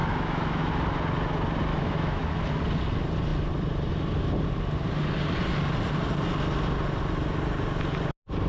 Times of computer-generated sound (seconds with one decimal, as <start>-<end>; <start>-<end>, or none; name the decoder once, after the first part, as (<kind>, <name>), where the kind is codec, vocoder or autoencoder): 0.0-0.7 (autoencoder, DAC-VAE); 1.7-2.4